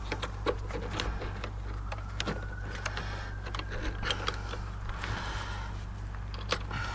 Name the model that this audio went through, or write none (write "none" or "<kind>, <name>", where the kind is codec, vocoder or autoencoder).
none